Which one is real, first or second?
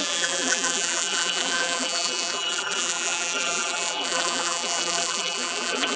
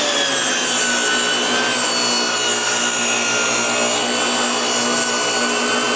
second